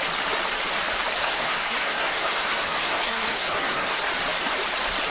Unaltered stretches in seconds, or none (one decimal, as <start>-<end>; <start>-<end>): 0.0-1.2; 4.0-5.1

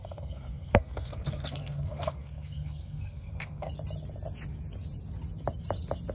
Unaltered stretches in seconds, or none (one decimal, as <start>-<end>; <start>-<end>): 3.7-6.1

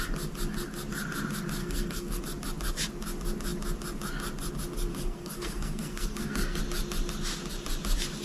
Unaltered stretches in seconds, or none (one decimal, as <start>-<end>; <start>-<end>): 0.0-1.6; 2.2-4.9; 6.6-8.2

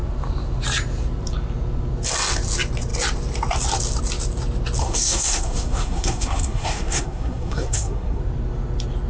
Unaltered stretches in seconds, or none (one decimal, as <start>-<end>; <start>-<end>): 0.0-4.8; 8.2-9.1

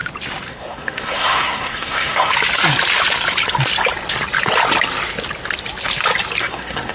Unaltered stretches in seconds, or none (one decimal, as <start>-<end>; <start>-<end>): 0.0-0.5; 2.3-6.4

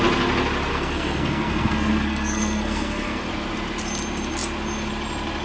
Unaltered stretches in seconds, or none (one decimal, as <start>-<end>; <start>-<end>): 0.0-0.7; 3.3-5.4

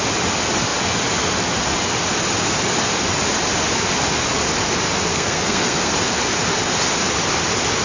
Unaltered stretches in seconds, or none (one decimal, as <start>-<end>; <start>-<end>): 0.0-5.1; 5.9-7.8